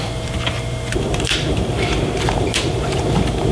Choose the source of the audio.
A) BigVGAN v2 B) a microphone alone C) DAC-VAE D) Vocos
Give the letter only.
A